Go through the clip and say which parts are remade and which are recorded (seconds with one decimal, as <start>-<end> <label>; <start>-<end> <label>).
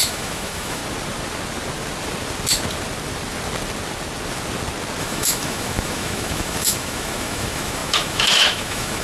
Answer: 0.0-0.8 remade; 0.8-5.0 recorded; 5.0-9.0 remade